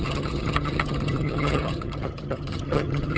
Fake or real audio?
fake